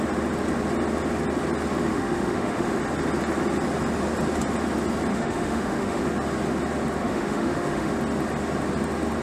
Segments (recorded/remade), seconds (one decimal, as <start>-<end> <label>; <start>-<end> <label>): 0.0-1.9 recorded; 1.9-2.8 remade; 2.8-5.1 recorded; 5.1-6.0 remade; 6.0-7.0 recorded; 7.0-7.9 remade; 7.9-9.2 recorded